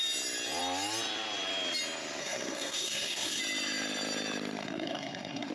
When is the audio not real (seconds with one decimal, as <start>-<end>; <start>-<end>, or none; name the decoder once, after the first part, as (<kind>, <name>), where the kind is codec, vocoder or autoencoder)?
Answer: 2.2-3.4 (codec, SNAC); 4.6-5.5